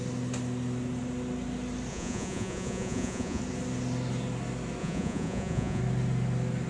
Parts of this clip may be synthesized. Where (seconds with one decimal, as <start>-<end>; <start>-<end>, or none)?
1.9-3.4; 4.8-5.8